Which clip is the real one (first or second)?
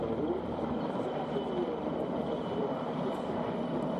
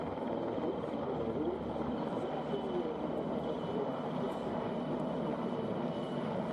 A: second